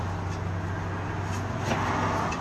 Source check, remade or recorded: recorded